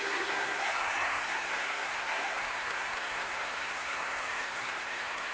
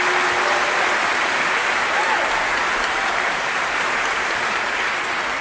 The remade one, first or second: first